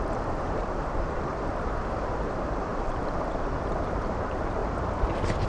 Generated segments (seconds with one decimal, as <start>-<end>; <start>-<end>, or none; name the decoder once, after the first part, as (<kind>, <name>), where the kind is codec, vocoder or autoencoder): 0.0-1.3 (vocoder, BigVGAN v2); 1.9-4.6; 5.1-5.5